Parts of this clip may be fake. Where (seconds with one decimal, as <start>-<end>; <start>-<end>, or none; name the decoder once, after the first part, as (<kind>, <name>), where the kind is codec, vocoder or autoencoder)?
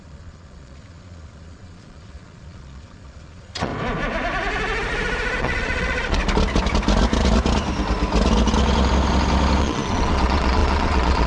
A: 0.0-3.7 (vocoder, Vocos); 5.4-6.2; 9.6-11.3